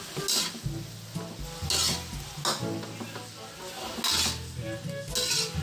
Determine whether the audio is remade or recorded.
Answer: recorded